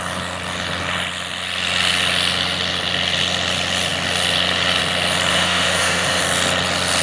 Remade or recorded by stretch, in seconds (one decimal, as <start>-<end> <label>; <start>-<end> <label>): 0.0-5.3 recorded; 5.3-6.2 remade; 6.2-7.0 recorded